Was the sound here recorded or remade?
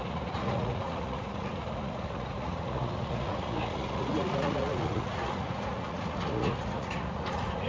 remade